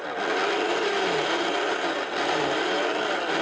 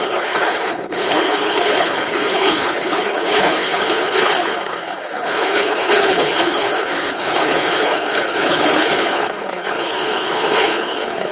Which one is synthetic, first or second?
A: second